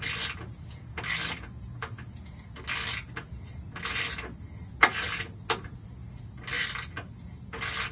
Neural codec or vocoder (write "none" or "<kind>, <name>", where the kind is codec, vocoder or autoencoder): none